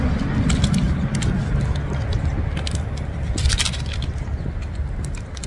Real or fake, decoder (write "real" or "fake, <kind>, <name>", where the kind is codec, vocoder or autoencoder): real